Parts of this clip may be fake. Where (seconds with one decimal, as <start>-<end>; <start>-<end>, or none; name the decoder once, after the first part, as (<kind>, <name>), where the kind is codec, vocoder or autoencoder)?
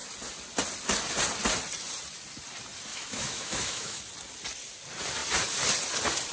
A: 2.9-4.0 (autoencoder, DAC-VAE)